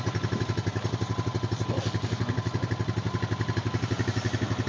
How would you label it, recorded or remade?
recorded